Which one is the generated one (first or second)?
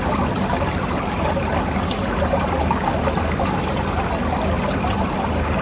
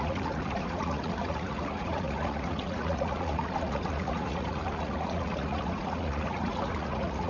second